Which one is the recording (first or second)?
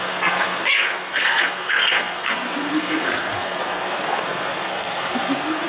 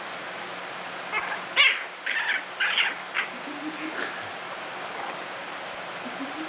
second